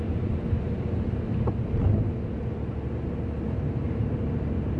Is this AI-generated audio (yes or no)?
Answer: no